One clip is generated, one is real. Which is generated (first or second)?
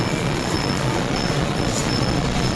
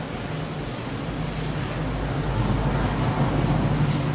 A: first